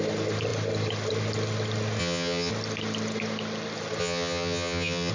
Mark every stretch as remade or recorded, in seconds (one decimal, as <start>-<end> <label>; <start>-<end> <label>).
0.0-2.0 recorded; 2.0-2.5 remade; 2.5-4.0 recorded; 4.0-5.1 remade